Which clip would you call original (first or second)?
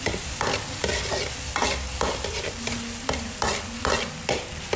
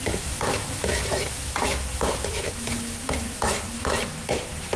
first